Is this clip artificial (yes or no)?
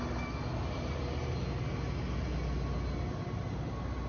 no